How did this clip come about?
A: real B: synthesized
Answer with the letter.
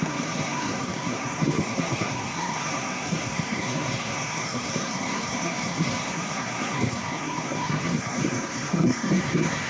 B